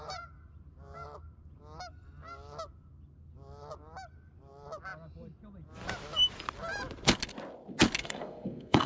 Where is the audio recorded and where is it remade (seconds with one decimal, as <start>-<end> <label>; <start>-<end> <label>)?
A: 0.0-8.0 recorded; 8.0-8.9 remade